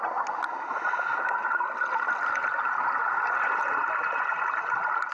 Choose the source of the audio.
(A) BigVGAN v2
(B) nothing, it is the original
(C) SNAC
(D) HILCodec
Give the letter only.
B